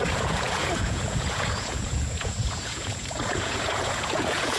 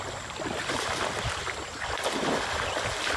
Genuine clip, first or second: second